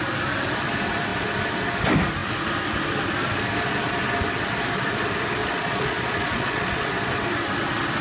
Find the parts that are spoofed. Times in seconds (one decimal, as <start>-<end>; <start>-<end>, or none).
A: 5.4-7.1